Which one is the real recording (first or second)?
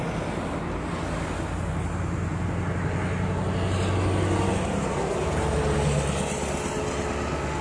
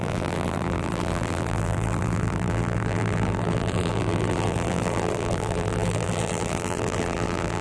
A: first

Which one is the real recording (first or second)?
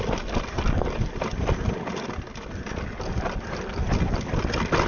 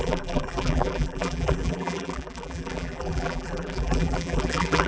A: first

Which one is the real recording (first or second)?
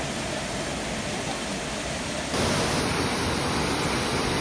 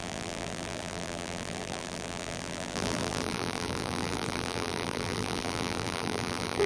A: first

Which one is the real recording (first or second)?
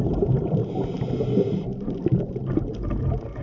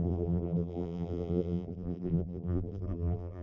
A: first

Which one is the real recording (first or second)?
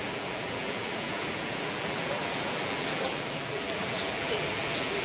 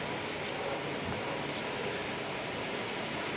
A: second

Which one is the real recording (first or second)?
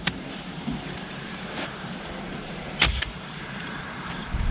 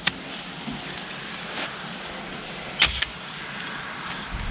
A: second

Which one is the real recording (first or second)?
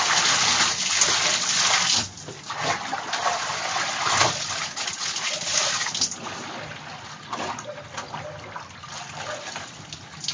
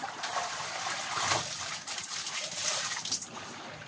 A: first